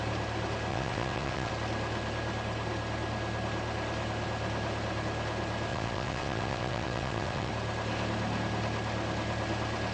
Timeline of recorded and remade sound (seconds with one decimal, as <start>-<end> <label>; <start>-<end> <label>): 0.0-0.7 recorded; 0.7-1.5 remade; 1.5-5.7 recorded; 5.7-7.5 remade; 7.5-9.9 recorded